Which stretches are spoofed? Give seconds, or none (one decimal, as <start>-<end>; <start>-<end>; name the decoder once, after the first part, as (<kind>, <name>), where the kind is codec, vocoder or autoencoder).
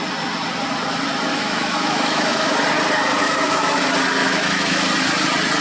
1.3-2.5 (autoencoder, DAC-VAE); 3.2-3.8; 4.2-4.9